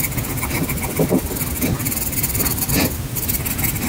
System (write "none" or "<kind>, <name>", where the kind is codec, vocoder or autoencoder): none